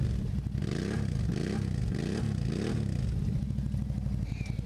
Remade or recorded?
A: recorded